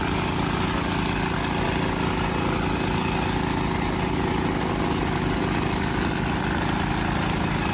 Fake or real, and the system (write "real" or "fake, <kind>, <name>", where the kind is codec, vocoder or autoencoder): real